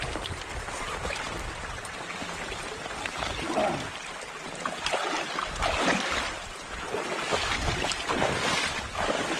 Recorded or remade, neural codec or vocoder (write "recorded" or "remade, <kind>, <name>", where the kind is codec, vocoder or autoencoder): recorded